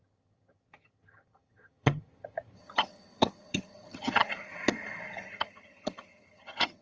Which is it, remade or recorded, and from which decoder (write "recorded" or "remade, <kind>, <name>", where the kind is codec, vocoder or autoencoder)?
remade, vocoder, HiFi-GAN